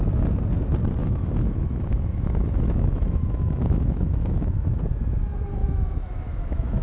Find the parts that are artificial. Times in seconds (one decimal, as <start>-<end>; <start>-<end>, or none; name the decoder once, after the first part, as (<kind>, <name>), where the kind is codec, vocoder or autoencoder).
1.0-4.8 (autoencoder, DAC-VAE); 5.6-6.8